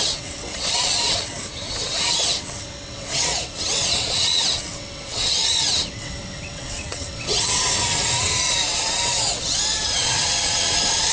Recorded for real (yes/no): no